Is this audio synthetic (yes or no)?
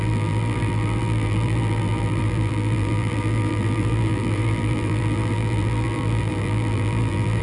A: yes